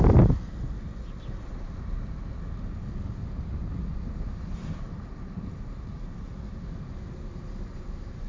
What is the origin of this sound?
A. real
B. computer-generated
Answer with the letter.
A